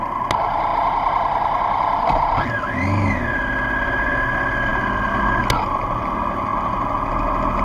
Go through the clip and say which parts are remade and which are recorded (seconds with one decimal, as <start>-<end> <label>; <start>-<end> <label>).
0.0-7.6 recorded